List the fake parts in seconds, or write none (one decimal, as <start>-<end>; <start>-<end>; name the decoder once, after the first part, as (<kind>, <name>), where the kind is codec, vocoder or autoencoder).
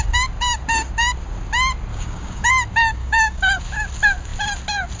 1.9-2.5 (codec, DAC); 3.0-3.6